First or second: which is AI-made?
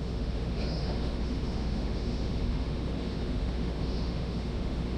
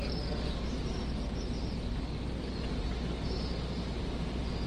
first